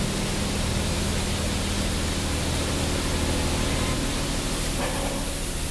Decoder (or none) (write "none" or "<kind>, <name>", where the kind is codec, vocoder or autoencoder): none